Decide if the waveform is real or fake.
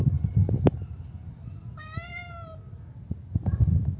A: real